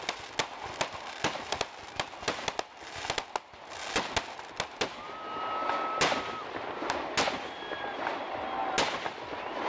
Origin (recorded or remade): recorded